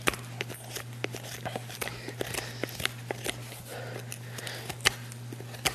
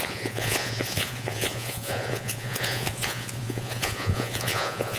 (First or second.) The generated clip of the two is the second